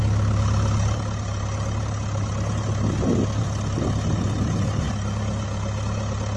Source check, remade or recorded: recorded